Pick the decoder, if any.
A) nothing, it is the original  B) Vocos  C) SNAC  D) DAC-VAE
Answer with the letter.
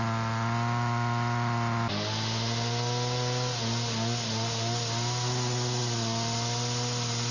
A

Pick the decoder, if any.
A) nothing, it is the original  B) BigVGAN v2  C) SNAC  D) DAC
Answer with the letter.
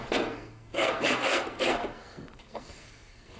C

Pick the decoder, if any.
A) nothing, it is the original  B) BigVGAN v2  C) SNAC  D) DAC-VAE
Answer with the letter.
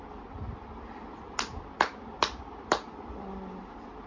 A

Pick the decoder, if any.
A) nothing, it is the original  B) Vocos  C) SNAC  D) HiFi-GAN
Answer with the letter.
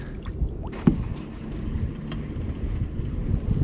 A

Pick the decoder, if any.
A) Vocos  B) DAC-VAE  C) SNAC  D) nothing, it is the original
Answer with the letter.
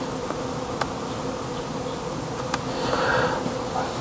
D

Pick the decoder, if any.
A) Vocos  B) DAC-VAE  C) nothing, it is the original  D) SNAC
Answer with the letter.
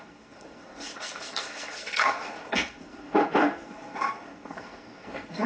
D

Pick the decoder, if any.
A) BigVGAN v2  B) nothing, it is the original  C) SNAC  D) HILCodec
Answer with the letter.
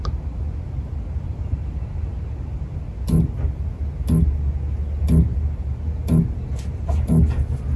B